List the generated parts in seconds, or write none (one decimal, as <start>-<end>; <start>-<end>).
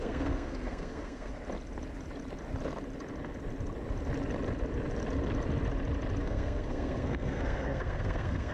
0.0-1.3; 6.2-8.5